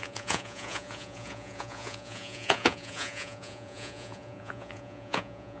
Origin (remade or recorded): remade